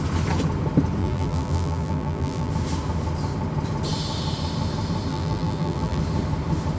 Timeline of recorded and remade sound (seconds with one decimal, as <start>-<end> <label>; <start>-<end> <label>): 0.0-1.0 recorded; 1.0-2.5 remade; 2.5-5.1 recorded; 5.1-6.0 remade; 6.0-6.8 recorded